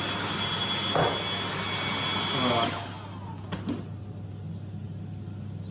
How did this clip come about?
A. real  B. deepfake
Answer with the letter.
A